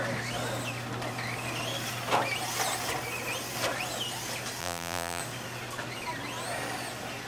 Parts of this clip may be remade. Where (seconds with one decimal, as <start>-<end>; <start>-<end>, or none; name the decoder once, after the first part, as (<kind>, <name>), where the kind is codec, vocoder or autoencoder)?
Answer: 4.6-5.2 (vocoder, BigVGAN v2)